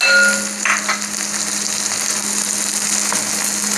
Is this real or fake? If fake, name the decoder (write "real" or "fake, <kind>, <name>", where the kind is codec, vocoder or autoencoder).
real